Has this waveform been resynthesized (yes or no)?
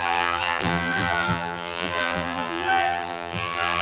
yes